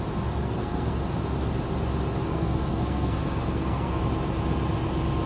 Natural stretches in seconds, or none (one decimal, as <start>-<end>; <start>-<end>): 0.0-0.4; 1.0-2.3; 4.0-5.3